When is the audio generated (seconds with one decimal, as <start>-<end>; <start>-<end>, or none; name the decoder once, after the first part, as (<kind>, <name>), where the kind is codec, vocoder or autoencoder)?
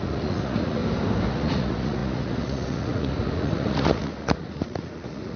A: 0.0-0.8 (vocoder, Vocos); 1.3-5.4